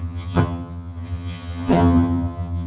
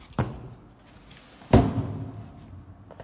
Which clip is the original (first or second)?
second